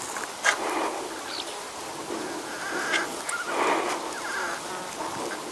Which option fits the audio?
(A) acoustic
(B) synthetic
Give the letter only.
A